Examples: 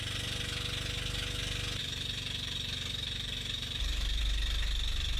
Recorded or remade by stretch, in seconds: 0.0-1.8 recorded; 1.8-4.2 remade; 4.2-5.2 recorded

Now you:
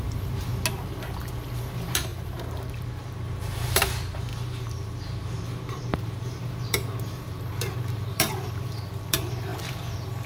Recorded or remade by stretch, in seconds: 0.0-0.5 remade; 0.5-1.7 recorded; 1.7-10.3 remade

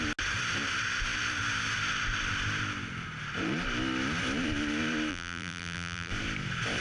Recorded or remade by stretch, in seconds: 0.0-5.1 recorded; 5.1-6.1 remade; 6.1-6.8 recorded

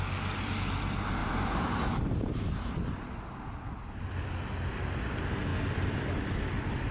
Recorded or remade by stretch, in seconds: 0.0-1.2 recorded; 1.2-2.7 remade; 2.7-6.9 recorded